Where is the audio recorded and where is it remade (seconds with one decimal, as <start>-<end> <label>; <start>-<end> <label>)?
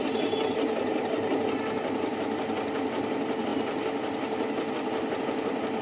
0.0-5.8 recorded